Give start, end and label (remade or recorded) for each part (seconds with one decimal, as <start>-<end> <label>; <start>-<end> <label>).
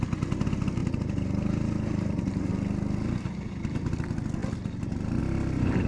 0.0-0.8 recorded; 0.8-2.5 remade; 2.5-5.9 recorded